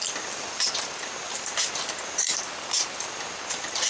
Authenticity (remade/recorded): remade